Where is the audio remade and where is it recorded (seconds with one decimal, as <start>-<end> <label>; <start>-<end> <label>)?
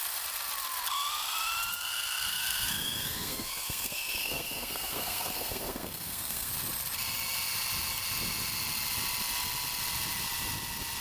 0.0-1.7 recorded; 1.7-6.5 remade; 6.5-11.0 recorded